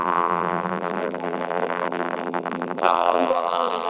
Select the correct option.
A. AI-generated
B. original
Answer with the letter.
A